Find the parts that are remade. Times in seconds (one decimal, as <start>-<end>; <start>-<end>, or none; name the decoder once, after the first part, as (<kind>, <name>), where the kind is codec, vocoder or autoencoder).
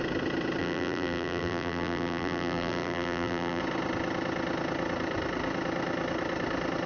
0.6-3.6 (vocoder, BigVGAN v2)